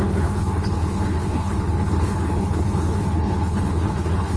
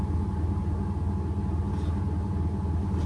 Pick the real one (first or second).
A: second